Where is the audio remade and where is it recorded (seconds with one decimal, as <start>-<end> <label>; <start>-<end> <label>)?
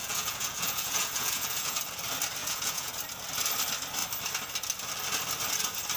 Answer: 0.0-1.8 remade; 1.8-2.4 recorded; 2.4-2.9 remade; 2.9-6.0 recorded